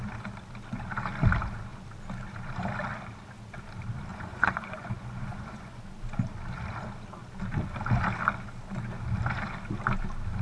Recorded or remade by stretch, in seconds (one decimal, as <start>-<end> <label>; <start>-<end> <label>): 0.0-4.1 recorded; 4.1-5.8 remade; 5.8-10.4 recorded